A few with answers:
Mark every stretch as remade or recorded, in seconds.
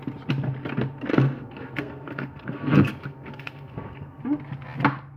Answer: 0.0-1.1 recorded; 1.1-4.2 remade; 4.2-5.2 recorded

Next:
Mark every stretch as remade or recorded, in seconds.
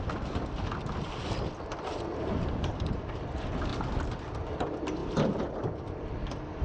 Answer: 0.0-2.1 recorded; 2.1-3.2 remade; 3.2-3.7 recorded; 3.7-4.2 remade; 4.2-6.6 recorded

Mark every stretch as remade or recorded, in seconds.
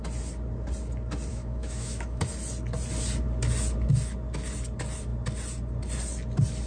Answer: 0.0-1.3 recorded; 1.3-2.2 remade; 2.2-6.7 recorded